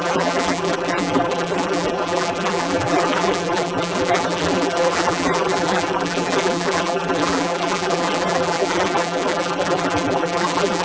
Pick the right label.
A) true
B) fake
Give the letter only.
B